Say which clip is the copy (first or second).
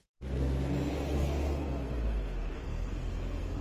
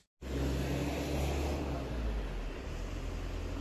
first